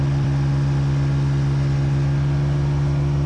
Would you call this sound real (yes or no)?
yes